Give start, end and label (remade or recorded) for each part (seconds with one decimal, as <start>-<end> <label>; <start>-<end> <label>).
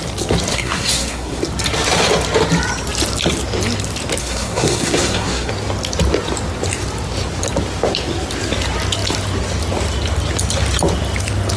0.0-0.5 recorded; 0.5-1.4 remade; 1.4-4.2 recorded; 4.2-5.5 remade; 5.5-11.6 recorded